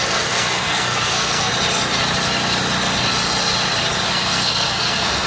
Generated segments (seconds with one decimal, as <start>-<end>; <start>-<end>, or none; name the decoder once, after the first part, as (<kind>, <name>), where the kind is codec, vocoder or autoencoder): 0.0-1.5 (codec, SNAC); 4.1-5.3